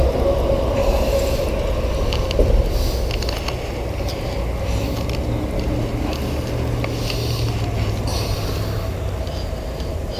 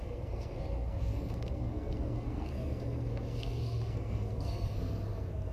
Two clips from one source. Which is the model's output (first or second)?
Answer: second